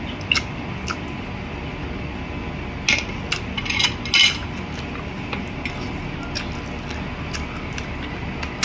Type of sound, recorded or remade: recorded